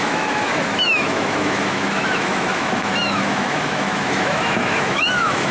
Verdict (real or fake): fake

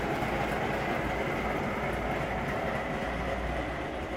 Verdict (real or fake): real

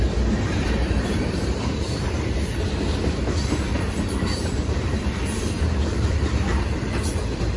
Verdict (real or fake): fake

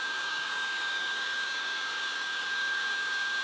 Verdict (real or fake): fake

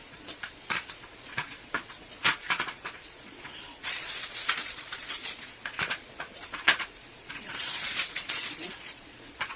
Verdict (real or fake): fake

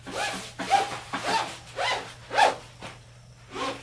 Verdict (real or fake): real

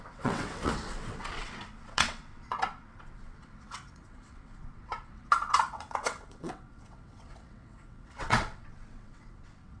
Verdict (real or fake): fake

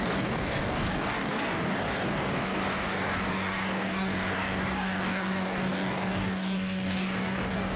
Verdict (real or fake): fake